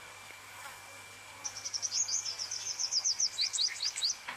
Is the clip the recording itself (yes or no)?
no